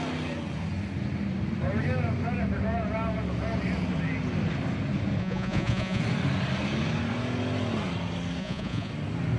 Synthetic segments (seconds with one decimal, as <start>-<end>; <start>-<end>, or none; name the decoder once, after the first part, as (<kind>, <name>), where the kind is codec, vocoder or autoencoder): 5.2-6.0 (vocoder, Vocos); 8.4-8.9